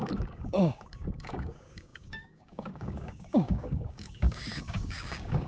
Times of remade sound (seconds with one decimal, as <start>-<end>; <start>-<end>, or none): 0.0-5.5